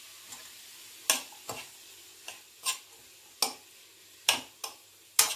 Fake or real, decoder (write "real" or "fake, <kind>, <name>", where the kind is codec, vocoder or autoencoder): real